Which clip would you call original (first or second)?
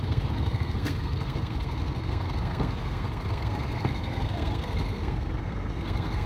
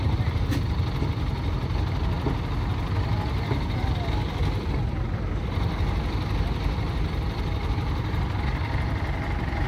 second